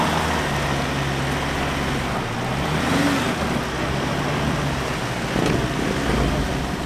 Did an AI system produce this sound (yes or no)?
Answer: no